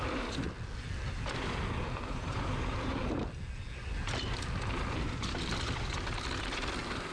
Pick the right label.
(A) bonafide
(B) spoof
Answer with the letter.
A